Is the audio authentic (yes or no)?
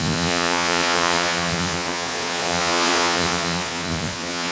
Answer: no